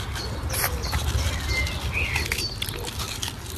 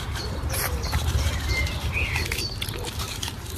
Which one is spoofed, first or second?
second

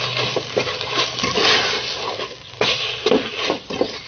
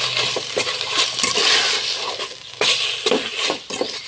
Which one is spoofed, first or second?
second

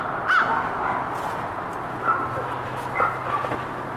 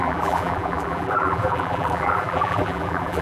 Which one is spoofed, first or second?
second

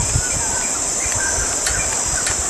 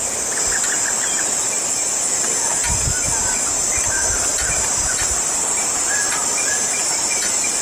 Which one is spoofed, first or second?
first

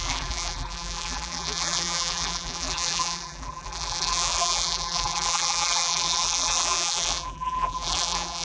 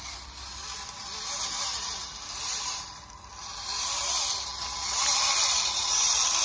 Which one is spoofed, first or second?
first